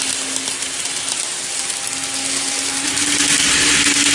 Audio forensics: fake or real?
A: real